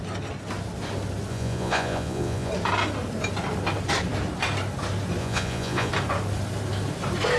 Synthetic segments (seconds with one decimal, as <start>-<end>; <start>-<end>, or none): 1.3-2.5; 5.2-5.9